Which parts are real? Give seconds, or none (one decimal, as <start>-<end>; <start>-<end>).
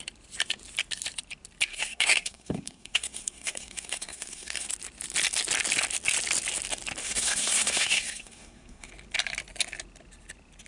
0.0-1.7; 4.7-7.0; 8.9-10.7